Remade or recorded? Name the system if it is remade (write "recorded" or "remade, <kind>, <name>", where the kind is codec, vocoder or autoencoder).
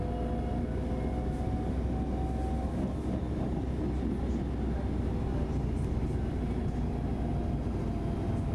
recorded